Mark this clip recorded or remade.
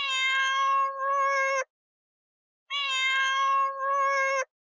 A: recorded